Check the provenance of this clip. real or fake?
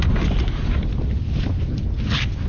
real